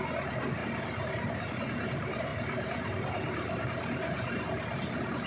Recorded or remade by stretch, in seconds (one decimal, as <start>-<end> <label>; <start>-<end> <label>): 0.0-0.6 recorded; 0.6-1.6 remade; 1.6-2.3 recorded; 2.3-5.3 remade